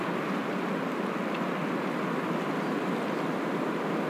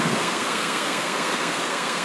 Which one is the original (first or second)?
first